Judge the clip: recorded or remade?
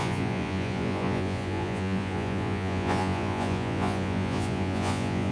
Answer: remade